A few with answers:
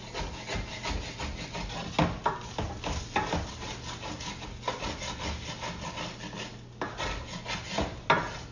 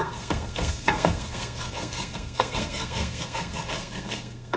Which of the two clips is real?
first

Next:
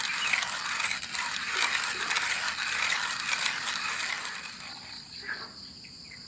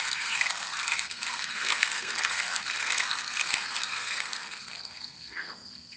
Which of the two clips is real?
first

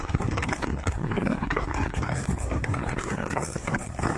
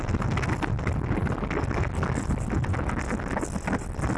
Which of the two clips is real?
second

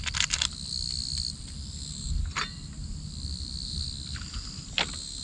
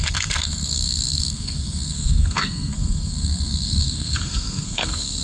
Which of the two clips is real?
first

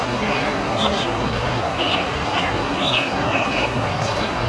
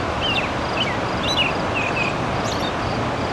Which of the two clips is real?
second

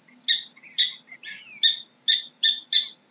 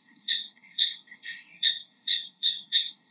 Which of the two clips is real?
first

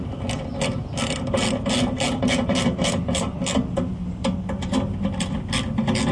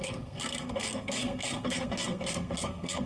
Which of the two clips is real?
first